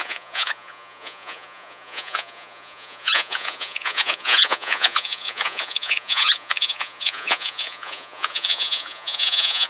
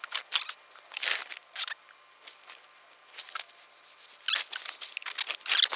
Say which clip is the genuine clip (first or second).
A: second